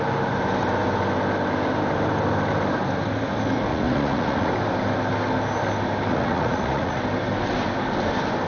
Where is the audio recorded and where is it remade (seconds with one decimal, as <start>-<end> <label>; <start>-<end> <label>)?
0.0-3.7 recorded; 3.7-4.5 remade; 4.5-6.1 recorded; 6.1-7.0 remade; 7.0-8.5 recorded